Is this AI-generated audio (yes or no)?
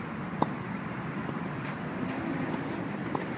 no